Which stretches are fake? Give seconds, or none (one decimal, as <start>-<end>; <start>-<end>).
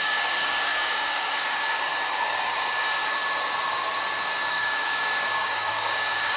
0.0-1.9; 2.7-3.2; 4.5-6.4